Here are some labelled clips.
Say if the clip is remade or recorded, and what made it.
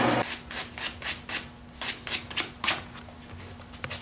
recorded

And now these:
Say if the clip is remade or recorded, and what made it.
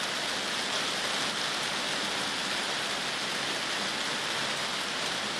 recorded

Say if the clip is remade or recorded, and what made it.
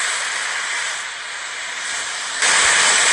recorded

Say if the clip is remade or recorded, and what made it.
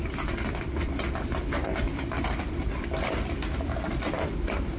recorded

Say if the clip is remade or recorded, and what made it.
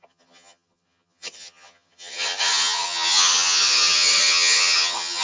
remade, vocoder, HiFi-GAN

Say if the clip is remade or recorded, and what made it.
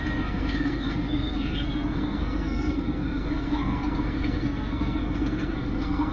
remade, codec, SNAC